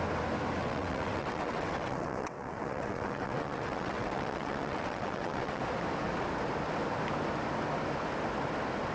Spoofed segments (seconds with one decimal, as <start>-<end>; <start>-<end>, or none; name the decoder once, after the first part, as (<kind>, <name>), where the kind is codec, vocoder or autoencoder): 0.6-5.6 (vocoder, WaveNeXt)